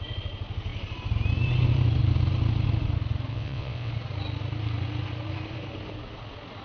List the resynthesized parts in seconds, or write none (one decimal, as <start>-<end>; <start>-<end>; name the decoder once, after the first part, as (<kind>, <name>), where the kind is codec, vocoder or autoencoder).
3.3-3.9 (vocoder, WaveNeXt)

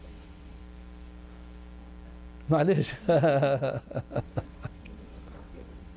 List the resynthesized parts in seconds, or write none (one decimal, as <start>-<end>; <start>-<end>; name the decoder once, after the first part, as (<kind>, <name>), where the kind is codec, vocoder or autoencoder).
0.0-0.6 (vocoder, WaveNeXt); 4.2-6.0

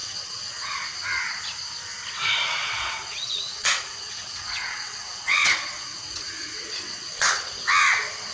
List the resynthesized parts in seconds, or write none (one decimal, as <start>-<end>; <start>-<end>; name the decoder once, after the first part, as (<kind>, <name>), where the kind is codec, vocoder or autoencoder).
0.0-0.7 (vocoder, WaveNeXt); 2.6-7.5

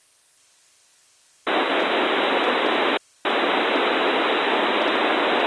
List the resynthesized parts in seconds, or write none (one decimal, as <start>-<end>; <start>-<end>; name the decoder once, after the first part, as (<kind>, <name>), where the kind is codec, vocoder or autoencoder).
none

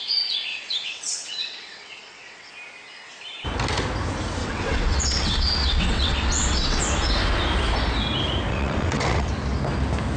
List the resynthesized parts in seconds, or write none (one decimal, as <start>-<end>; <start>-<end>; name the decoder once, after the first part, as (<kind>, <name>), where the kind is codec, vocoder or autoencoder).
0.5-2.5 (vocoder, WaveNeXt); 4.4-6.8; 8.5-9.3

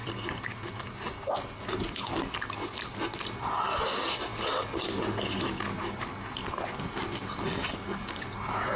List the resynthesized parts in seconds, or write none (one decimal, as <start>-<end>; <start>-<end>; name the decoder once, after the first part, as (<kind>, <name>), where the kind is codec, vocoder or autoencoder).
none